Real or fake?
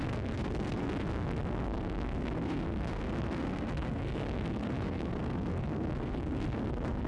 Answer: fake